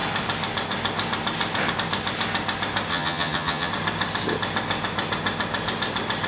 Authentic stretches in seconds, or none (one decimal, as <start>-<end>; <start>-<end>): 0.0-2.9; 3.7-6.3